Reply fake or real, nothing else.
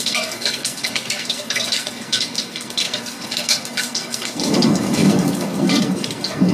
fake